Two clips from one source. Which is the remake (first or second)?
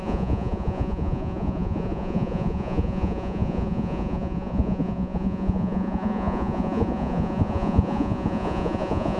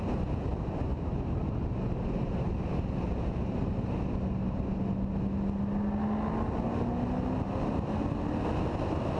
first